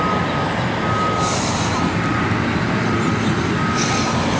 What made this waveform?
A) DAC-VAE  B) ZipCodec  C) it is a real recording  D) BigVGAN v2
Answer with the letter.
C